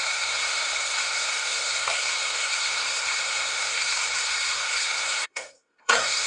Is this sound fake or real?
fake